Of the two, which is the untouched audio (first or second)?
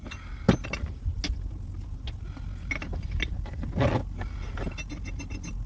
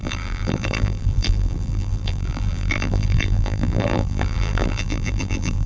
first